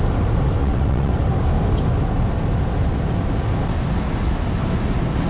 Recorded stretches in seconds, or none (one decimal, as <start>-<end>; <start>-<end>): 0.0-0.6; 1.1-5.3